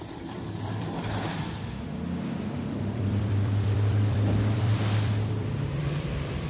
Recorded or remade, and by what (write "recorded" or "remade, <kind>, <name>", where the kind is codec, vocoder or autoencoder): remade, vocoder, BigVGAN v2